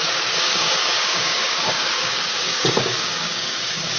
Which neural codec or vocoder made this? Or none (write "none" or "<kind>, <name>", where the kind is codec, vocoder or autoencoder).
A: codec, DAC